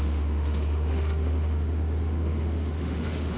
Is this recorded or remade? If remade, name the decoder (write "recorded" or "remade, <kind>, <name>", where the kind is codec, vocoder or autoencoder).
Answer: remade, autoencoder, DAC-VAE